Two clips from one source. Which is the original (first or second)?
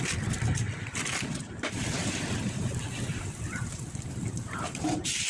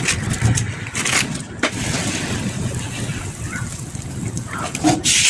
second